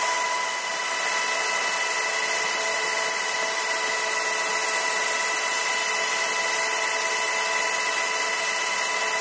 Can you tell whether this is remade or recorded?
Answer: recorded